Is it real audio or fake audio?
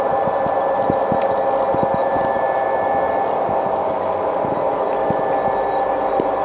real